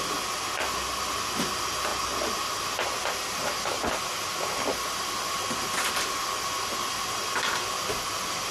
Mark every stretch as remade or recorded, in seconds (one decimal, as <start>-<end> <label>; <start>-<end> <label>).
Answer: 0.0-8.5 recorded

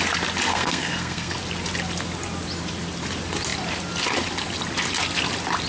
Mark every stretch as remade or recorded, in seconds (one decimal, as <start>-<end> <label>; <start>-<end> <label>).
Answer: 0.0-0.5 recorded; 0.5-1.3 remade; 1.3-5.7 recorded

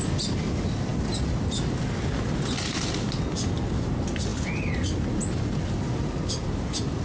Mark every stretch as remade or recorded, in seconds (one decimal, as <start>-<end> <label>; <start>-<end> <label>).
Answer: 0.0-7.0 recorded

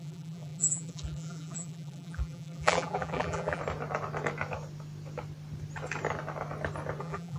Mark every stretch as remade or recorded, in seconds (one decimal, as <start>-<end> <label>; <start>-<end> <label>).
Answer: 0.0-3.6 remade; 3.6-7.0 recorded; 7.0-7.4 remade

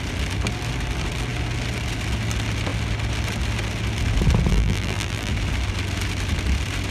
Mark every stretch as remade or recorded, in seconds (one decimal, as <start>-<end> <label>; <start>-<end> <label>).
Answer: 0.0-4.5 recorded; 4.5-5.3 remade; 5.3-6.9 recorded

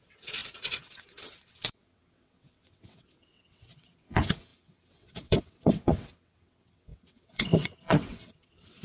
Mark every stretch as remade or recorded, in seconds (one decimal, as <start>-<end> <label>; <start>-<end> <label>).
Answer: 0.0-8.8 remade

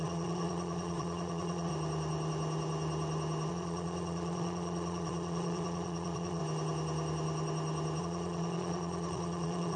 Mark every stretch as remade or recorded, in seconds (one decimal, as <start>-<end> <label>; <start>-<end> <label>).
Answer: 0.0-1.7 remade; 1.7-3.5 recorded; 3.5-6.4 remade; 6.4-8.0 recorded; 8.0-9.8 remade